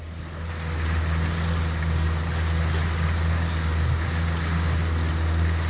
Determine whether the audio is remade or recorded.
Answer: recorded